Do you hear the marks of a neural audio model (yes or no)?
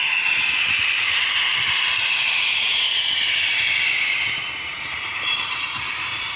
yes